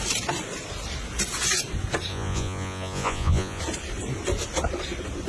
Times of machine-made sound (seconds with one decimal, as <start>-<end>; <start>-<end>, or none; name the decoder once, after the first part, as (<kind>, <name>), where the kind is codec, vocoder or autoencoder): 2.1-3.6 (vocoder, Vocos)

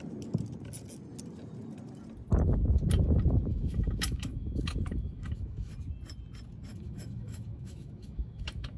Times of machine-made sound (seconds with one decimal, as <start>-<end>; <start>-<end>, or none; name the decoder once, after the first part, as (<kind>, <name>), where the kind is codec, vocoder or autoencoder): 3.5-5.7 (autoencoder, DAC-VAE); 6.7-8.8

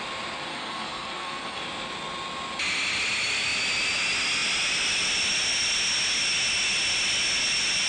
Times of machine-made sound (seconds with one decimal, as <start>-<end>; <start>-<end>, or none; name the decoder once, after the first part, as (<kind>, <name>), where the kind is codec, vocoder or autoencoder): 0.5-1.6 (codec, SNAC)

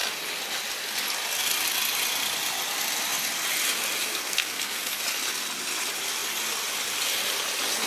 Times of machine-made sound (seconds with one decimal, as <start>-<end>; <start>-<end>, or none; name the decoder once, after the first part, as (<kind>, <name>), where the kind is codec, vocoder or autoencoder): 4.1-5.0 (codec, SNAC)